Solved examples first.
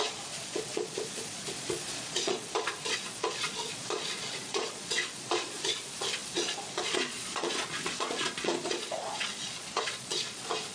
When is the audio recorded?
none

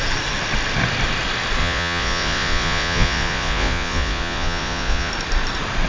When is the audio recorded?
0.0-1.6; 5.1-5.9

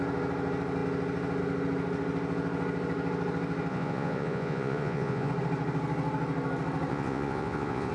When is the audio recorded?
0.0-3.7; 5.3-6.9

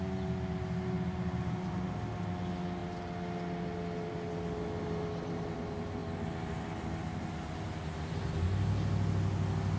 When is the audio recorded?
0.0-9.8

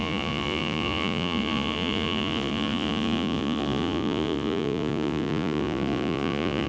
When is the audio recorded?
none

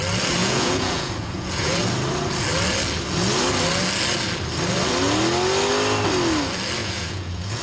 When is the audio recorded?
0.0-0.4; 1.8-6.8